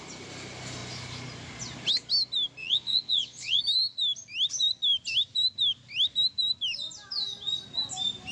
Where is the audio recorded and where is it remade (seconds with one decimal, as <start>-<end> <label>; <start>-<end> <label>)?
0.0-2.6 recorded; 2.6-3.6 remade; 3.6-8.3 recorded